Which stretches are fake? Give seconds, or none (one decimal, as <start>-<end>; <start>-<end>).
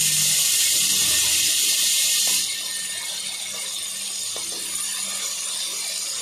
1.0-2.2